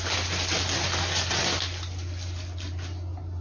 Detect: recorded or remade recorded